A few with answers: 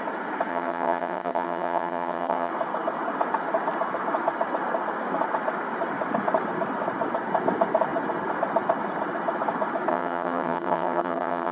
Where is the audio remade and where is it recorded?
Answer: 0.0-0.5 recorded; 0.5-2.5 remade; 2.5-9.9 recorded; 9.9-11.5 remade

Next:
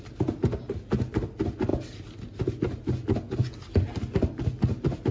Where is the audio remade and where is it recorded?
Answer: 0.0-5.1 recorded

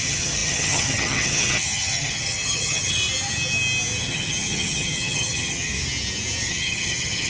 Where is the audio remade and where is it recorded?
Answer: 0.0-3.0 remade; 3.0-4.0 recorded; 4.0-5.7 remade; 5.7-6.5 recorded; 6.5-7.3 remade

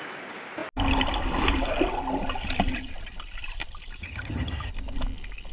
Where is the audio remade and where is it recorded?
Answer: 0.0-4.0 recorded; 4.0-4.7 remade; 4.7-5.5 recorded